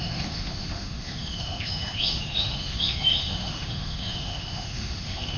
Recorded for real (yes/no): no